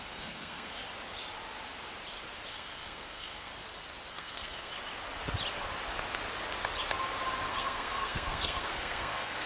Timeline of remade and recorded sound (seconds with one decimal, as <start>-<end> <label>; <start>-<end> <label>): 0.0-0.8 remade; 0.8-2.5 recorded; 2.5-3.5 remade; 3.5-4.1 recorded; 4.1-4.7 remade; 4.7-7.5 recorded; 7.5-9.5 remade